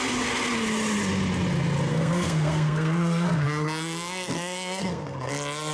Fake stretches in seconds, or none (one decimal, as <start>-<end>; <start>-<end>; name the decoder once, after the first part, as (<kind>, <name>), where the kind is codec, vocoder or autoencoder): 1.9-5.3 (codec, SNAC)